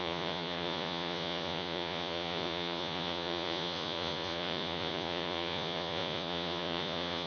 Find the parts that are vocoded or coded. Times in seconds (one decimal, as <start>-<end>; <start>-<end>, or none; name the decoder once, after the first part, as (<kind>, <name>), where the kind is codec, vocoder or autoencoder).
0.0-7.3 (vocoder, Vocos)

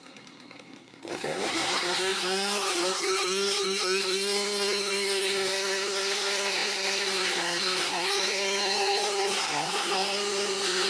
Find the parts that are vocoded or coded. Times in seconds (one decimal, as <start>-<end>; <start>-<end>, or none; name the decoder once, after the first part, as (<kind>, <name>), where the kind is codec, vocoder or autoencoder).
0.0-10.9 (codec, SNAC)

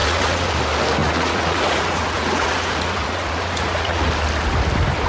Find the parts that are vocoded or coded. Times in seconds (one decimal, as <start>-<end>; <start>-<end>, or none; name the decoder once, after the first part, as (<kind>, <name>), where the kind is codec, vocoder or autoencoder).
0.0-0.5 (vocoder, Vocos); 1.0-4.1

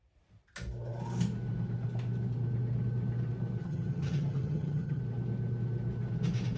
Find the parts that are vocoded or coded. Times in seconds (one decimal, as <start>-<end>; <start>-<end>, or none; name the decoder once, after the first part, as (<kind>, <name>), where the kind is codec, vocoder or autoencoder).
3.6-5.0 (vocoder, HiFi-GAN)

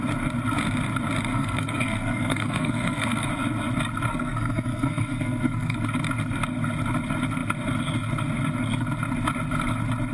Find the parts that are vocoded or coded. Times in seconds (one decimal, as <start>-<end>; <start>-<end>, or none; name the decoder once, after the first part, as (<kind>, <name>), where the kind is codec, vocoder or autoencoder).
1.3-3.3 (codec, SNAC); 4.1-5.8

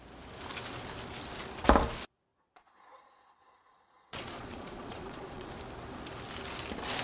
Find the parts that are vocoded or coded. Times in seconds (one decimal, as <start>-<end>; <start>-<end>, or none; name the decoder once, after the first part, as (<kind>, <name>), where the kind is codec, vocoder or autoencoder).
2.3-5.5 (vocoder, Vocos)

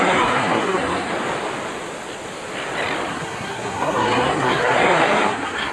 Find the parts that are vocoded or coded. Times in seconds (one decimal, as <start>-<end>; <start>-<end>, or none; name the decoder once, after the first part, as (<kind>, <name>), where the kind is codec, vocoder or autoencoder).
0.0-1.1 (codec, SNAC); 3.1-5.7